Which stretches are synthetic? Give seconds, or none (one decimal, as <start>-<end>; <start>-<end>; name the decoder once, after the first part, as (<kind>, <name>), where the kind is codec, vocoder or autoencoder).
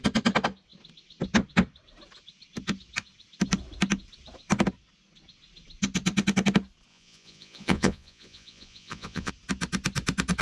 6.9-9.3 (vocoder, Vocos)